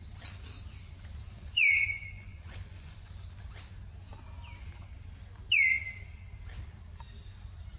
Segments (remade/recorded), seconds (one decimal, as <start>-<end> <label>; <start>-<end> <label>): 0.0-1.2 recorded; 1.2-3.1 remade; 3.1-7.8 recorded